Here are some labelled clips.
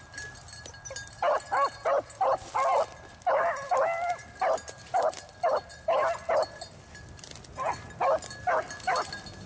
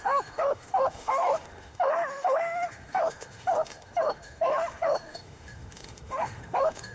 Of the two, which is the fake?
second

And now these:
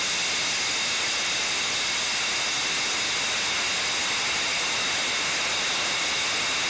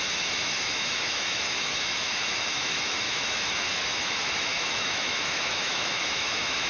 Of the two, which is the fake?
second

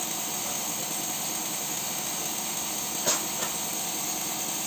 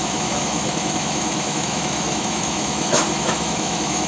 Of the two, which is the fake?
second